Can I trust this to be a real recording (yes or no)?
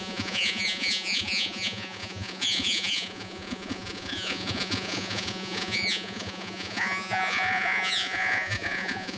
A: no